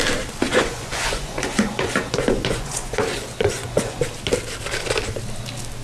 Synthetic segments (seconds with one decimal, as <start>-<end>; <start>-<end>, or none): 0.5-4.0